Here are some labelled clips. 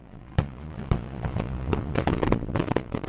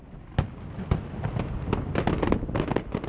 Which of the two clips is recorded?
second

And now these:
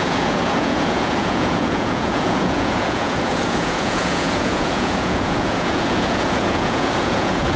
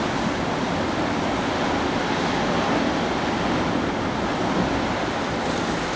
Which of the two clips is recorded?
second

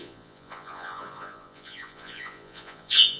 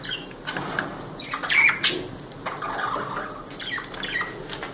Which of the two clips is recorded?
second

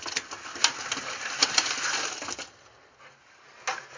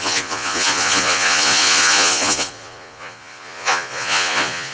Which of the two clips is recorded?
first